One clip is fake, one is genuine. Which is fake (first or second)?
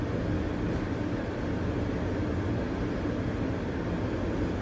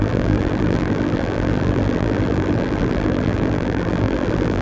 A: second